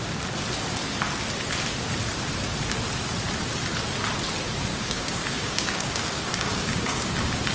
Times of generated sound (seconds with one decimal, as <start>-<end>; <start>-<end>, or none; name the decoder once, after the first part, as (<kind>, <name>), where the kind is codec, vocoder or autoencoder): 4.7-7.1 (codec, DAC)